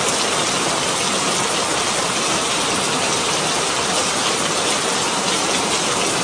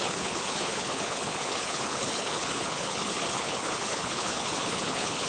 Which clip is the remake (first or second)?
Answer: second